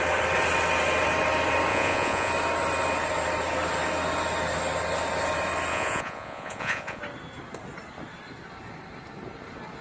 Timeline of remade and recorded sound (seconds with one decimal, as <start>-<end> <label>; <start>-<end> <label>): 0.0-1.7 recorded; 1.7-2.3 remade; 2.3-5.7 recorded; 5.7-7.0 remade; 7.0-9.8 recorded